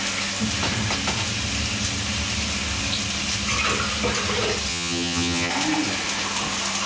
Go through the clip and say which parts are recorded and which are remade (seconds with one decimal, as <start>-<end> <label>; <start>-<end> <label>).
0.0-4.7 recorded; 4.7-5.5 remade; 5.5-6.9 recorded